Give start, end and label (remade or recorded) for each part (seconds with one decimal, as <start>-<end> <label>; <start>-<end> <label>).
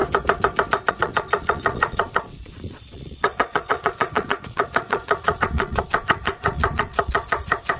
0.0-0.9 recorded; 0.9-7.8 remade